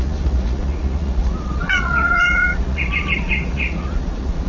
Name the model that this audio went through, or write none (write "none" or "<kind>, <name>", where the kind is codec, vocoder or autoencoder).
vocoder, Vocos